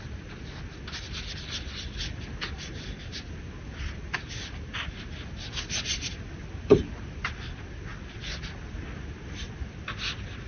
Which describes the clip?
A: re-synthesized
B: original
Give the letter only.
B